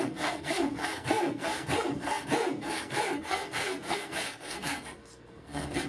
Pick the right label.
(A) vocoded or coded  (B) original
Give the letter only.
A